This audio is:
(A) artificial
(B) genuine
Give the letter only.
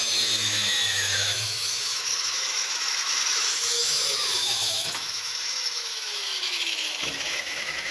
A